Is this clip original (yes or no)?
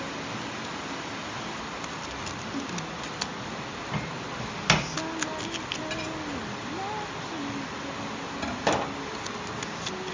yes